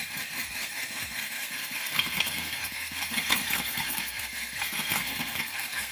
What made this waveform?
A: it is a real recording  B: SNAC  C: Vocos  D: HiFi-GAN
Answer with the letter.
B